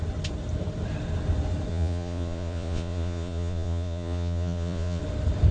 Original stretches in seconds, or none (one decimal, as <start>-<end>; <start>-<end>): 0.0-1.7; 5.0-5.5